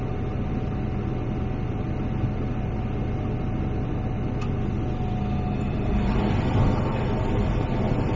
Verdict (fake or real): real